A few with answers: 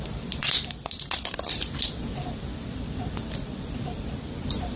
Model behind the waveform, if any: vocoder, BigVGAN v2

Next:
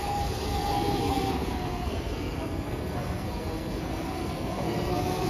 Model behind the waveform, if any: codec, SNAC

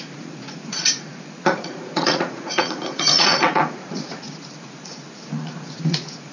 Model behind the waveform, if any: vocoder, Vocos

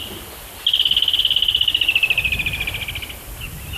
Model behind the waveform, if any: none